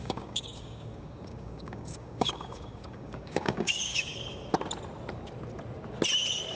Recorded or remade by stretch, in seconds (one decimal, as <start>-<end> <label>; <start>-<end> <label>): 0.0-4.1 remade; 4.1-6.5 recorded